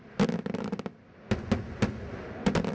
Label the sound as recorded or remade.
recorded